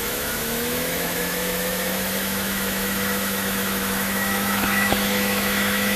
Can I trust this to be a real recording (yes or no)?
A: no